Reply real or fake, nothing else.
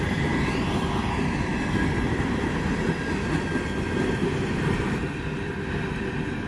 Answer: real